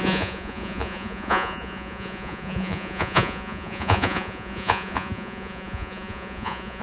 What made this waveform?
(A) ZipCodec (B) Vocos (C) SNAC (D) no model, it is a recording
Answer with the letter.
B